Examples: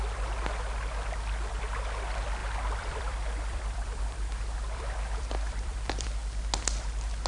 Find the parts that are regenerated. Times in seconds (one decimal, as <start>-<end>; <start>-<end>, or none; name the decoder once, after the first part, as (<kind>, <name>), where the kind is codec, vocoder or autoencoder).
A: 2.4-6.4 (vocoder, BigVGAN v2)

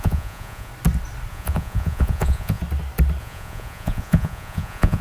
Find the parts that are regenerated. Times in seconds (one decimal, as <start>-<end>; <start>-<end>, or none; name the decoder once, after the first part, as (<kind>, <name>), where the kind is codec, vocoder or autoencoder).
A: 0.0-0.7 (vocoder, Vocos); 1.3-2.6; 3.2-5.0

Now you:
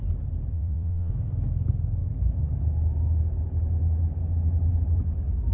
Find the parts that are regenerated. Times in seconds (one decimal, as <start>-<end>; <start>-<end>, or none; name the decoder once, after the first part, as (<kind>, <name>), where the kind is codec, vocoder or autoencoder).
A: 0.5-1.1 (vocoder, WaveNeXt)